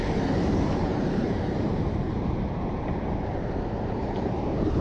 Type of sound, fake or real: fake